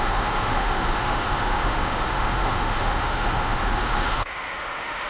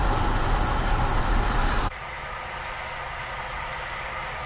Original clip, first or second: second